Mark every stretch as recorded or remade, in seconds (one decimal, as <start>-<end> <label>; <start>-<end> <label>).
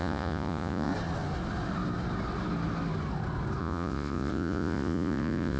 0.0-0.9 remade; 0.9-3.6 recorded; 3.6-5.6 remade